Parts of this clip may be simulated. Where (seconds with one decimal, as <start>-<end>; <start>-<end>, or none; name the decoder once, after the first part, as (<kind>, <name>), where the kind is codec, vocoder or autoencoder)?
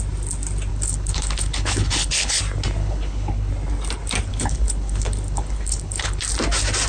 0.7-2.4 (codec, HILCodec); 2.8-3.5; 4.3-6.2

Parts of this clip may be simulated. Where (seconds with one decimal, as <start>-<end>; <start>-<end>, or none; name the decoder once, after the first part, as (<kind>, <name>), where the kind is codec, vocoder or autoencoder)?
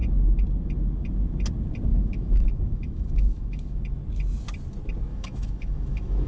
1.9-3.8 (autoencoder, DAC-VAE); 5.1-6.3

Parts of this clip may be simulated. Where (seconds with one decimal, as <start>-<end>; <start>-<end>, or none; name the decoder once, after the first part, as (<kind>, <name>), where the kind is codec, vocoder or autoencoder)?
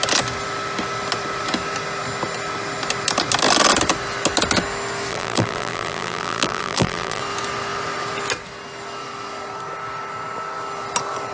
5.1-7.2 (vocoder, BigVGAN v2)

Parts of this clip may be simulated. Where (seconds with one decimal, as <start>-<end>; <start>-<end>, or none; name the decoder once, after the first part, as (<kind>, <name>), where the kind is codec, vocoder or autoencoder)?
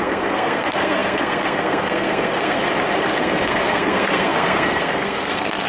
0.0-2.7 (codec, SNAC); 3.2-5.7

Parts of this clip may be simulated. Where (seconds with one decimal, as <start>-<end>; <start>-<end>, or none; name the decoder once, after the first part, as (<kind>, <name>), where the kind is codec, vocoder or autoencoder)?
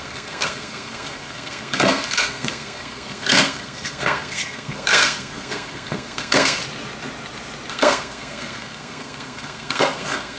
0.0-6.6 (codec, SNAC); 7.7-10.4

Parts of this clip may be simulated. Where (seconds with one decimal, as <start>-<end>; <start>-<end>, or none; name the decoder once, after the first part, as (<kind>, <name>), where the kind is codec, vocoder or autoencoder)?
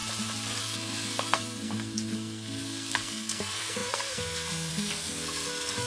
0.6-5.9 (codec, SNAC)